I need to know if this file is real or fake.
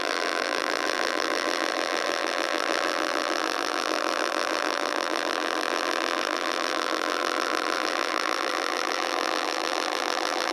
fake